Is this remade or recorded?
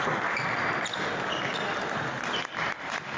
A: recorded